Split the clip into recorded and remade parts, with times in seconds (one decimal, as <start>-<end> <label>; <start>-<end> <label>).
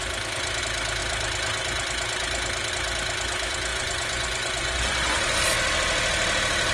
0.0-3.7 recorded; 3.7-5.4 remade; 5.4-6.7 recorded